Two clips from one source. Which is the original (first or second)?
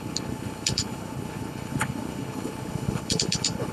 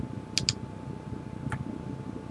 second